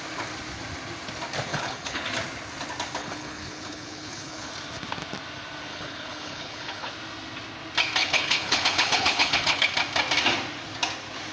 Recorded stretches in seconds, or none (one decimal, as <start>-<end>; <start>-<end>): 0.0-1.5; 2.1-3.0; 4.5-5.7; 6.9-8.0; 9.7-11.3